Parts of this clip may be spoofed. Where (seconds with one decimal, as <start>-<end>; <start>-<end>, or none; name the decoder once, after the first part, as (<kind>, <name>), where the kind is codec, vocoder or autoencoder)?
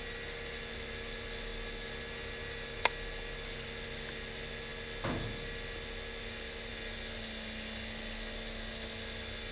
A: none